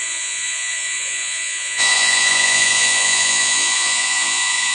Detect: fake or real fake